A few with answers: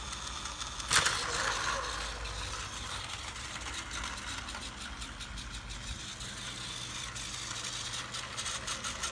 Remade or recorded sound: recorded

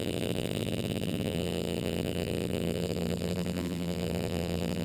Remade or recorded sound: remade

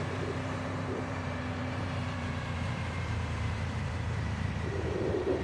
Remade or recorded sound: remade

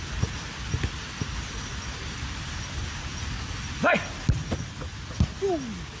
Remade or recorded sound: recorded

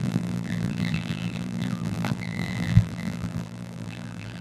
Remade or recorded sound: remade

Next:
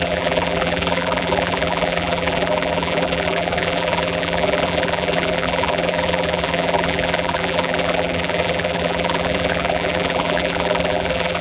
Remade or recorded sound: remade